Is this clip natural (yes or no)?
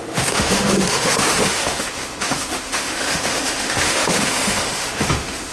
no